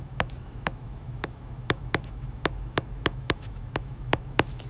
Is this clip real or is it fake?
fake